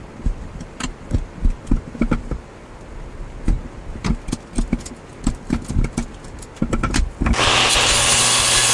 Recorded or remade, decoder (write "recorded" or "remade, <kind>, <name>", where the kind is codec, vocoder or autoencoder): recorded